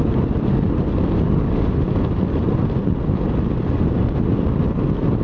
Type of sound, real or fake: real